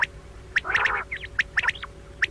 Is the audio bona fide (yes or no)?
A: yes